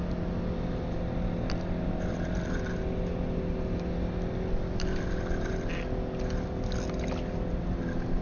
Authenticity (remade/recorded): recorded